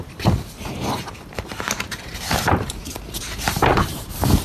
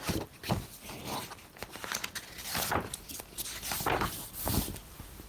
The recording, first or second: second